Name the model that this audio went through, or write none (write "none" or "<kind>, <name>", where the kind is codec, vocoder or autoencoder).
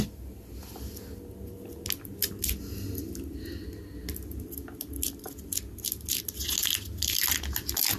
none